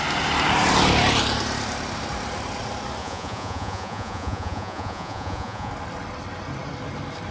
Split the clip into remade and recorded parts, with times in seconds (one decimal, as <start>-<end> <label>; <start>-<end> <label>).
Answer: 0.0-3.0 recorded; 3.0-5.7 remade; 5.7-7.3 recorded

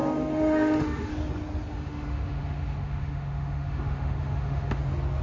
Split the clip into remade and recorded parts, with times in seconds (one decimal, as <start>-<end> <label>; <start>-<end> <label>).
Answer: 0.0-1.1 remade; 1.1-1.7 recorded; 1.7-4.8 remade; 4.8-5.2 recorded

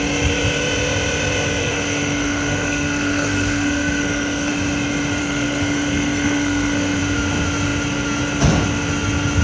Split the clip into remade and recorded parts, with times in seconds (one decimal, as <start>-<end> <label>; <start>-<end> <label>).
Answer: 0.0-1.6 recorded; 1.6-4.5 remade; 4.5-5.2 recorded; 5.2-7.0 remade; 7.0-9.4 recorded

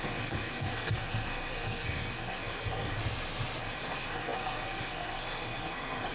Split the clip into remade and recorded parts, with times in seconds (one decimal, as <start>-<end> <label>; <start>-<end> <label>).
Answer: 0.0-3.0 remade; 3.0-3.6 recorded; 3.6-6.1 remade

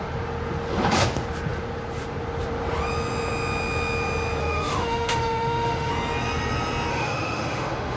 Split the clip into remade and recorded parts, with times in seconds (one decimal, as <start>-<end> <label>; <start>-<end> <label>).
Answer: 0.0-4.4 recorded; 4.4-5.9 remade; 5.9-6.9 recorded; 6.9-8.0 remade

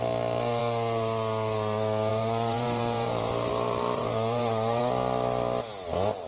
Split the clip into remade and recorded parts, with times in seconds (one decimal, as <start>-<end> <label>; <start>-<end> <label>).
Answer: 0.0-2.1 recorded; 2.1-4.8 remade; 4.8-6.3 recorded